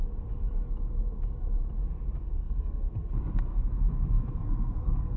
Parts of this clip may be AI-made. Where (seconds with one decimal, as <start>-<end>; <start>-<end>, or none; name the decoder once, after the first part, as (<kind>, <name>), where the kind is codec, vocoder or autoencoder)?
2.2-3.1 (codec, SNAC); 3.5-5.2